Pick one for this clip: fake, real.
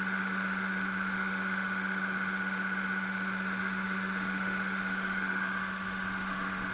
fake